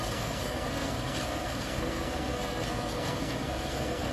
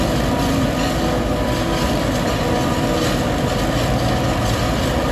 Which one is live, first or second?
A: second